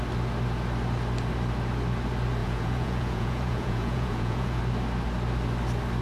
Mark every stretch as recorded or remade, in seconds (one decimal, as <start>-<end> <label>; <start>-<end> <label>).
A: 0.0-2.4 recorded; 2.4-4.6 remade; 4.6-6.0 recorded